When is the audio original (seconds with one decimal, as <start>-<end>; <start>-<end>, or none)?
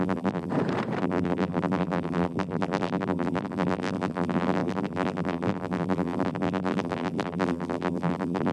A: 0.5-1.0